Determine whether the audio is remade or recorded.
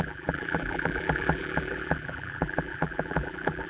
remade